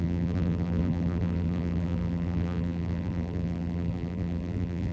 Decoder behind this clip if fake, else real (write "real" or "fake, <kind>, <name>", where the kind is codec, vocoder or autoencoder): fake, vocoder, BigVGAN v2